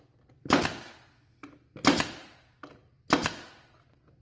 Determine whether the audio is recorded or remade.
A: recorded